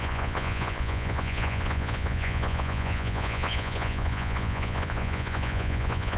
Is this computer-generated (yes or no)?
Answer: yes